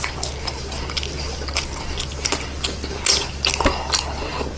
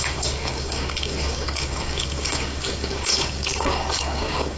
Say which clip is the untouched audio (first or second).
first